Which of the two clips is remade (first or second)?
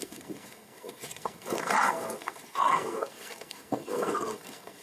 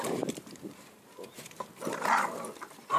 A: first